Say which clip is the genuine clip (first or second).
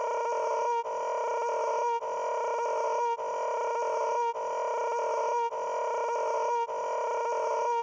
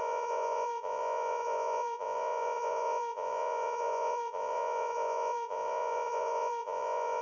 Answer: first